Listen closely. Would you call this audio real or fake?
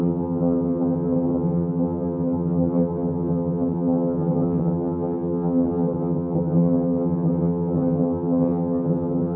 fake